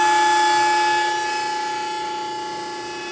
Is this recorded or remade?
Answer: recorded